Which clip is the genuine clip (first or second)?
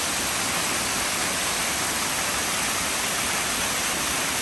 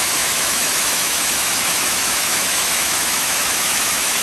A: first